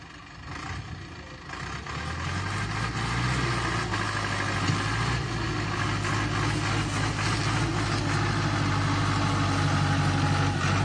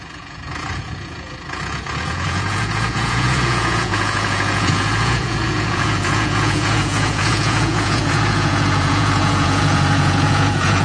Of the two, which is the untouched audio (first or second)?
first